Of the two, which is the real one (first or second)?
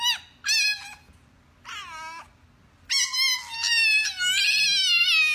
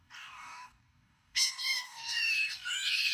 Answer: first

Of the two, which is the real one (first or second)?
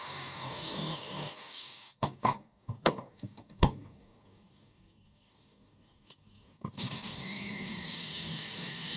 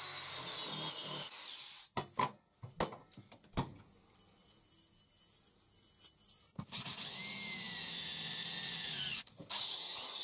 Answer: second